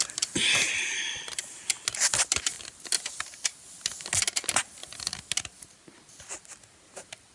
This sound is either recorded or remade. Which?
recorded